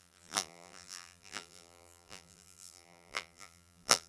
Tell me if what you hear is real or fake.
fake